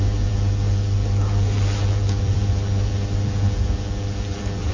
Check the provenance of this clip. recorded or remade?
remade